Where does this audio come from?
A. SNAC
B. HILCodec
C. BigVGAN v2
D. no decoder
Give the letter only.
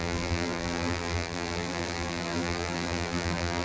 C